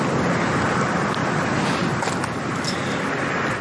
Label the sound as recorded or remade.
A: recorded